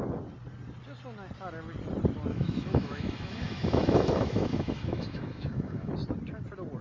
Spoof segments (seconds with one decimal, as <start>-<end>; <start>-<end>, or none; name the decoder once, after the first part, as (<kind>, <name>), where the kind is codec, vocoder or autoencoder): 2.3-5.9 (autoencoder, DAC-VAE)